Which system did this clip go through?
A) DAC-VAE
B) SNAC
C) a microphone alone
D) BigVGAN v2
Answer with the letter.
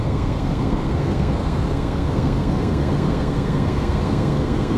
B